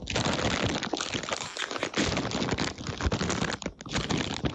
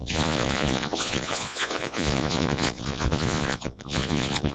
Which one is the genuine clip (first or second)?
first